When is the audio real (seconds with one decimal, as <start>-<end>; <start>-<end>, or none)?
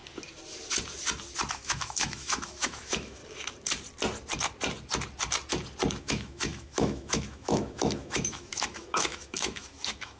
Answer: 0.0-1.5; 3.2-6.0